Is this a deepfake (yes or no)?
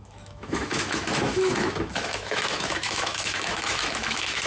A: yes